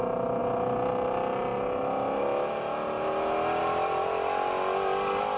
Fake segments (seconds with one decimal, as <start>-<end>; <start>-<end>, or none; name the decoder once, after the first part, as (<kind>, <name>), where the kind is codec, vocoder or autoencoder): none